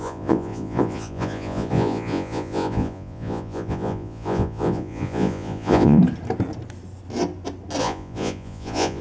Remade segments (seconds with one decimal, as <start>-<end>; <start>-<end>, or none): 0.0-6.0; 7.8-9.0